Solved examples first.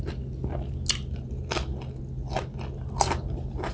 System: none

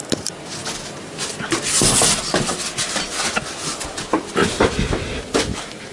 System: vocoder, BigVGAN v2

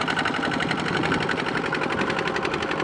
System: none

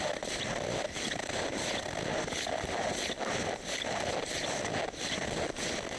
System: none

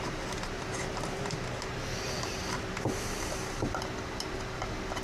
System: none